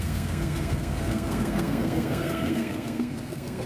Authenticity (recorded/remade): remade